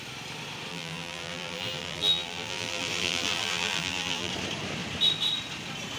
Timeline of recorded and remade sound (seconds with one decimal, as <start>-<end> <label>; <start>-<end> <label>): 0.0-0.7 recorded; 0.7-4.3 remade; 4.3-6.0 recorded